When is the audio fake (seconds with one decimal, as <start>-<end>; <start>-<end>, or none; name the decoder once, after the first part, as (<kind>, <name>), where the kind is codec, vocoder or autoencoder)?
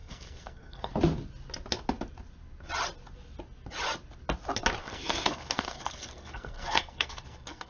0.0-0.9 (codec, SNAC); 4.8-7.7